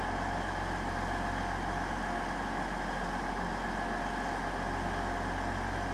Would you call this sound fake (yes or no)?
no